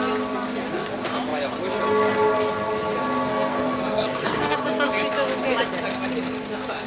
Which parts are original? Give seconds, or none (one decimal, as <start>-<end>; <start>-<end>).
0.0-3.3; 4.9-6.9